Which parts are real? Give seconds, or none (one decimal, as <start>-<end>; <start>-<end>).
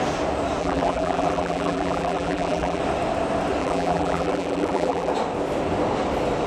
0.0-0.6; 2.8-3.6; 5.1-6.5